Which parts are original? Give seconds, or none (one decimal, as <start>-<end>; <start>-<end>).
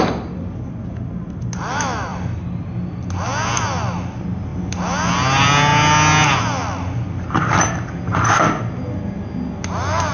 0.0-2.1; 2.6-10.1